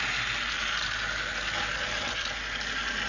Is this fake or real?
real